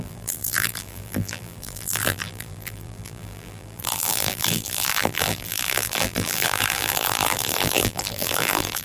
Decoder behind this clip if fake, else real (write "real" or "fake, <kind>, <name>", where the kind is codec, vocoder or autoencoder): fake, vocoder, BigVGAN v2